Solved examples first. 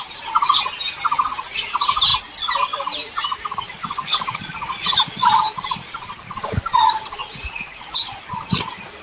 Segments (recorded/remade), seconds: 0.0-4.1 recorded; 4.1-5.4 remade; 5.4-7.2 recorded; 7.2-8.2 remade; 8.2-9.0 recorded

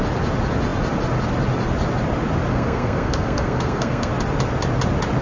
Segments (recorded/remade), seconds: 0.0-2.5 recorded; 2.5-4.1 remade; 4.1-5.2 recorded

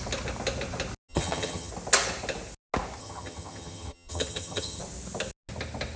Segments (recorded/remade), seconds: 0.0-1.1 recorded; 1.1-1.7 remade; 1.7-3.0 recorded; 3.0-4.8 remade; 4.8-6.0 recorded

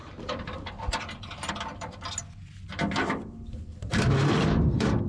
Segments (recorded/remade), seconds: 0.0-5.1 recorded

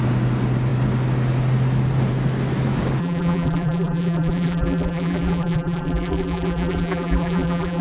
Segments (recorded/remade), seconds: 0.0-3.0 recorded; 3.0-7.8 remade